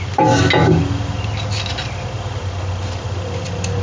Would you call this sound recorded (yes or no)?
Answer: yes